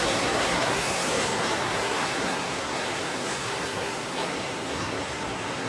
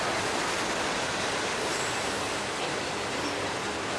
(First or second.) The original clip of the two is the second